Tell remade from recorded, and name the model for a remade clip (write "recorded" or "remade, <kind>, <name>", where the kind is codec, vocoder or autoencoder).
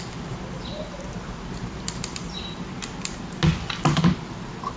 recorded